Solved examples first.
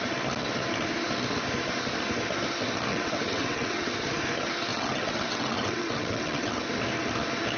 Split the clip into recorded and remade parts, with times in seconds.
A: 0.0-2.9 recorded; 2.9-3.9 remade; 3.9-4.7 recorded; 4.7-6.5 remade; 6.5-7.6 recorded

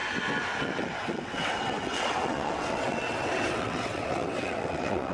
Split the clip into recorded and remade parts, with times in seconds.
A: 0.0-0.6 recorded; 0.6-5.1 remade

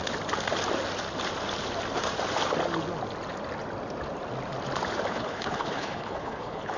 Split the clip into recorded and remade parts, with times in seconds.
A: 0.0-5.1 recorded; 5.1-6.8 remade

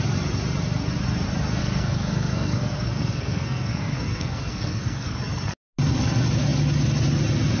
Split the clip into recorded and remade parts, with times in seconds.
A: 0.0-1.6 recorded; 1.6-5.2 remade; 5.2-7.6 recorded

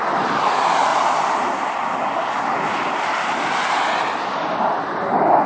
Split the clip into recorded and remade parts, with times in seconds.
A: 0.0-0.9 recorded; 0.9-3.4 remade; 3.4-5.5 recorded

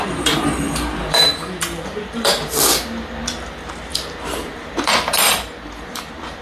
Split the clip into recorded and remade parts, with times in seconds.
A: 0.0-2.4 remade; 2.4-3.3 recorded; 3.3-6.4 remade

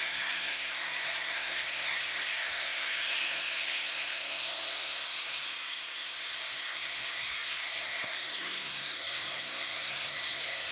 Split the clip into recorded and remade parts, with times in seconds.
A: 0.0-10.7 remade

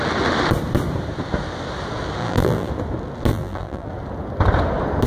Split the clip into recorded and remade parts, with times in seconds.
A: 0.0-2.2 recorded; 2.2-2.7 remade; 2.7-3.3 recorded; 3.3-3.9 remade; 3.9-5.1 recorded